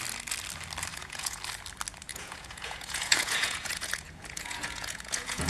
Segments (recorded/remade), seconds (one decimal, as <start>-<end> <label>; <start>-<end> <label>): 0.0-0.9 recorded; 0.9-1.4 remade; 1.4-2.1 recorded; 2.1-5.5 remade